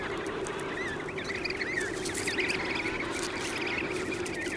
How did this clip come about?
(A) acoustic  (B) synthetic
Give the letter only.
A